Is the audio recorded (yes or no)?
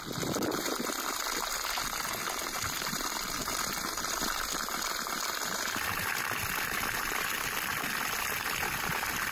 yes